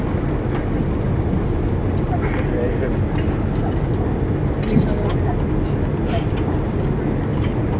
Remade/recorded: recorded